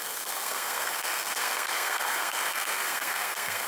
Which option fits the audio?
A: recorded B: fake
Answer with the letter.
B